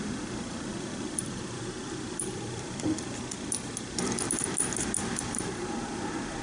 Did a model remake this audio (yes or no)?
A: yes